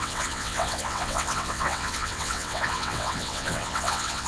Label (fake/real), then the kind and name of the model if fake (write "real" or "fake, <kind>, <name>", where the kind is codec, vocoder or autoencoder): fake, vocoder, WaveNeXt